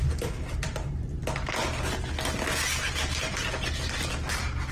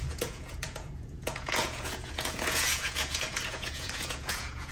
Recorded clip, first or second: first